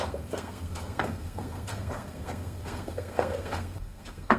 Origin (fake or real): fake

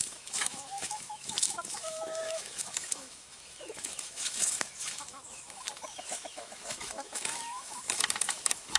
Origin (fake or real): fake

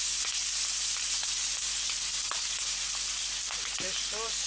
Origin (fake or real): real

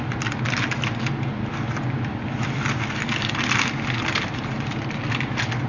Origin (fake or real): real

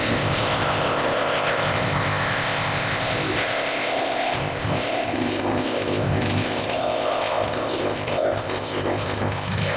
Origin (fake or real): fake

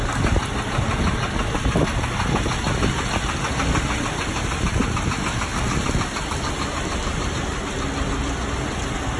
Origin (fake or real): real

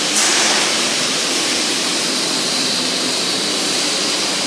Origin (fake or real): fake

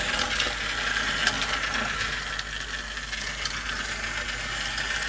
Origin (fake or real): real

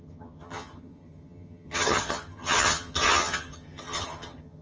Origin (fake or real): fake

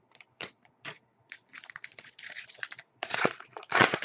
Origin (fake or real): fake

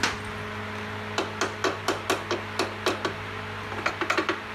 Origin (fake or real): real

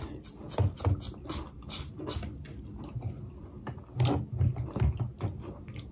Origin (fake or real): real